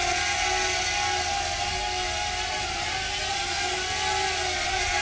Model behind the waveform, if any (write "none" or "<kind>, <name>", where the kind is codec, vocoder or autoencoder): none